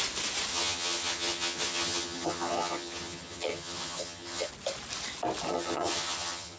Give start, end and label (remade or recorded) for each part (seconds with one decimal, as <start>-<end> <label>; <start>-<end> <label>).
0.0-0.5 recorded; 0.5-4.5 remade; 4.5-5.5 recorded; 5.5-6.6 remade